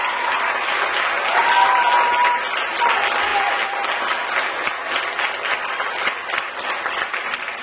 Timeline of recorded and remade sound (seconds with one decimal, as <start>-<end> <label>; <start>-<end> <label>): 0.0-7.6 recorded